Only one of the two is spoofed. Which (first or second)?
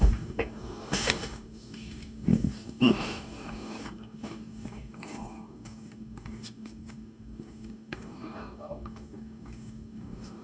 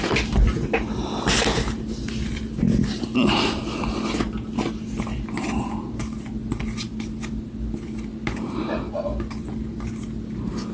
first